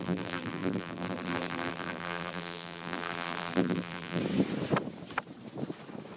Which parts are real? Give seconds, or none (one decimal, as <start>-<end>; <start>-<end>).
4.2-6.2